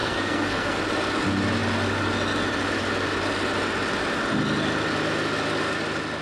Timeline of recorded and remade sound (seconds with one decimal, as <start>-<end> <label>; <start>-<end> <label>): 0.0-0.8 remade; 0.8-6.2 recorded